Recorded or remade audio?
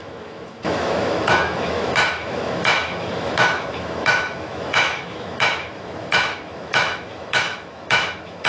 remade